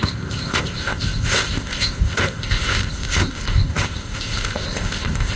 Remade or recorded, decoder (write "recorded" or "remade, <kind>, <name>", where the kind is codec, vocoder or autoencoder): remade, codec, ZipCodec